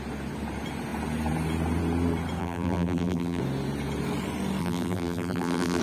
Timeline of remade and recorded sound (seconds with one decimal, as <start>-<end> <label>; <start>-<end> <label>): 0.0-2.4 recorded; 2.4-3.4 remade; 3.4-4.6 recorded; 4.6-5.8 remade